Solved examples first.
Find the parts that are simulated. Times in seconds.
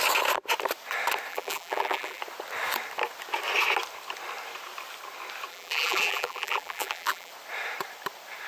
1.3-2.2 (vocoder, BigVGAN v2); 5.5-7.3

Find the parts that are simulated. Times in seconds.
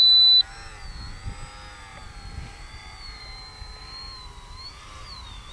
1.9-5.5 (vocoder, BigVGAN v2)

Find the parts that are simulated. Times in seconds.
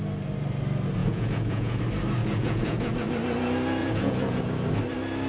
1.0-1.8 (vocoder, Vocos); 2.2-2.9; 3.8-4.4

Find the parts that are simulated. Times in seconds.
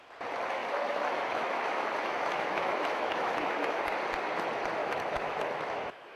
0.6-3.8 (autoencoder, DAC-VAE); 4.8-6.2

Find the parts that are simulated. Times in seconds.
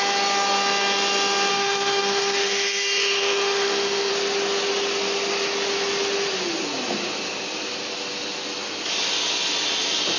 1.5-4.1 (autoencoder, DAC-VAE)